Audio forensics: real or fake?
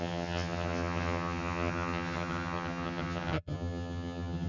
fake